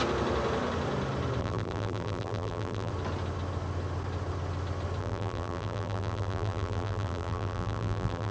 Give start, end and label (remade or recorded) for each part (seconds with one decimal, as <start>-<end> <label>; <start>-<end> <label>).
0.0-1.4 recorded; 1.4-2.9 remade; 2.9-5.0 recorded; 5.0-8.3 remade